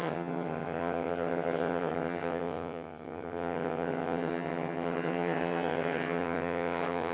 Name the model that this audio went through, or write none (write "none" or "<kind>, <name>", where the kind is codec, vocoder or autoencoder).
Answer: vocoder, HiFi-GAN